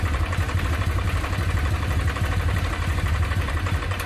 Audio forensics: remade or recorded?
remade